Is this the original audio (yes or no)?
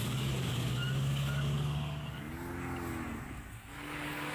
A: no